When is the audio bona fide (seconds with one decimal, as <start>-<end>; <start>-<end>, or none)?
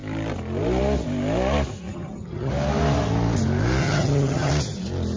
0.0-1.9; 2.5-3.8; 4.5-5.2